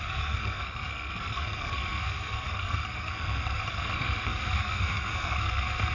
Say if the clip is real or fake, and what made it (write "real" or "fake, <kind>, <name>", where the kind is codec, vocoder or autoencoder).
fake, codec, SNAC